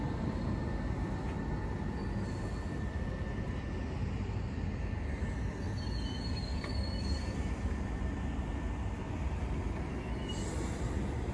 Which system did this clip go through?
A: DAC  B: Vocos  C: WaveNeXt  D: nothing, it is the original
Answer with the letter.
D